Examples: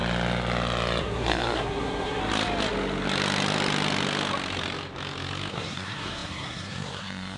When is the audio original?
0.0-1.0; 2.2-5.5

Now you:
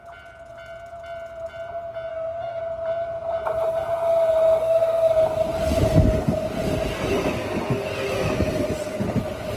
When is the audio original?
0.0-2.1; 2.6-4.6; 5.1-9.6

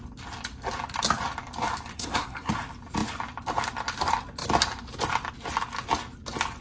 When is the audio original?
0.0-1.9; 2.5-6.6

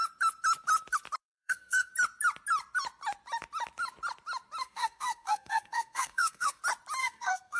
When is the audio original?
0.0-1.2; 1.9-4.6; 6.6-7.0

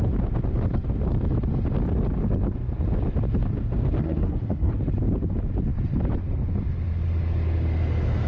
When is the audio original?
0.0-4.0; 4.7-8.3

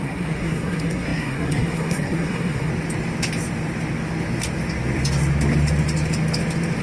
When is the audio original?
2.7-6.8